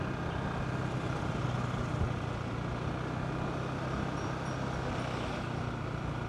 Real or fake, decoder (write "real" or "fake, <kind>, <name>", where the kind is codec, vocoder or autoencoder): real